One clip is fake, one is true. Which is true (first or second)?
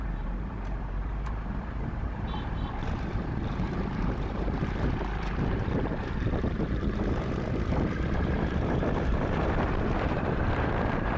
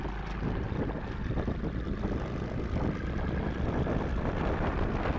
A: second